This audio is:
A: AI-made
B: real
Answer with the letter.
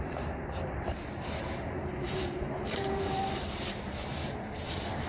A